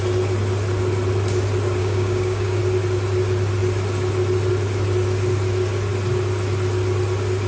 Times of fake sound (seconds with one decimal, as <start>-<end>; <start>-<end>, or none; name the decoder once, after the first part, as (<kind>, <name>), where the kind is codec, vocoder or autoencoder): 1.8-2.6 (codec, DAC)